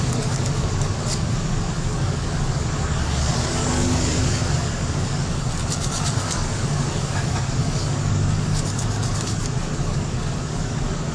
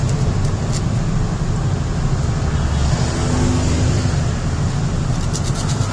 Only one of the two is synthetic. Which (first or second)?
first